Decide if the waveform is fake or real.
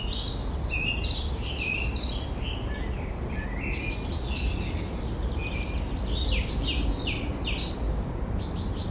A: real